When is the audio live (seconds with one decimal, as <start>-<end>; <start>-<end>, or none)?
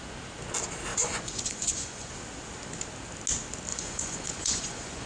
0.0-0.9; 2.1-3.7